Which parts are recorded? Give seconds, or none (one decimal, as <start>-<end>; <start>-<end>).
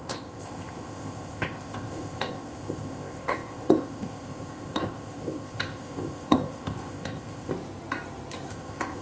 7.5-8.5